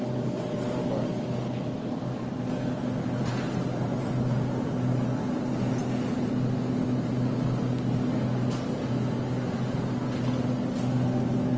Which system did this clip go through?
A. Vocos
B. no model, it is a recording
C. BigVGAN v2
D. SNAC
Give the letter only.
B